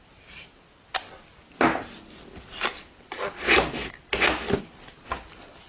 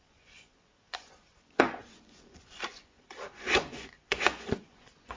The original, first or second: first